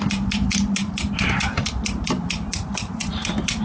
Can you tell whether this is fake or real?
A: real